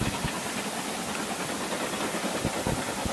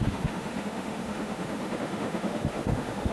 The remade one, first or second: second